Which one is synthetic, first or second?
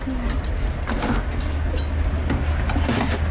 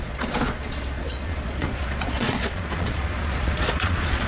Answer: second